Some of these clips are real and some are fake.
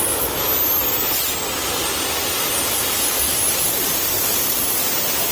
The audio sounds real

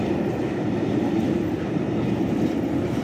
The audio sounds real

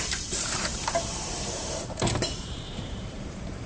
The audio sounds fake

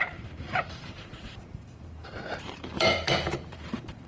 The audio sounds fake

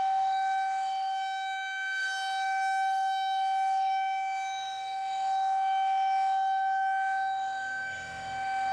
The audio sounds fake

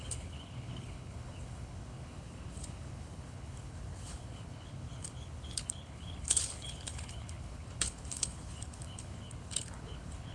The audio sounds fake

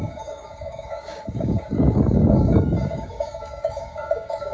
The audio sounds fake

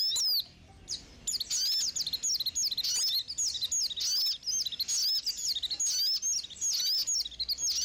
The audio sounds real